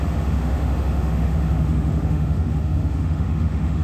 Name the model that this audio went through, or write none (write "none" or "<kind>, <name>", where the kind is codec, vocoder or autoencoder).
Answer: autoencoder, DAC-VAE